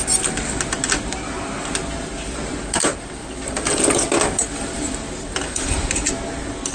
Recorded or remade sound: recorded